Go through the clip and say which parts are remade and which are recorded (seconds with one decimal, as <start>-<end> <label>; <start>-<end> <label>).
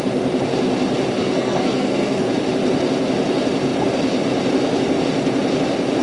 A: 0.0-1.2 recorded; 1.2-2.3 remade; 2.3-6.0 recorded